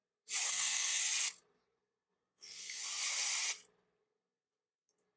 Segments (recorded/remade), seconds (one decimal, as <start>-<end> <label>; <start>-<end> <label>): 0.0-0.5 recorded; 0.5-1.0 remade; 1.0-1.6 recorded; 1.6-2.8 remade; 2.8-4.0 recorded; 4.0-5.2 remade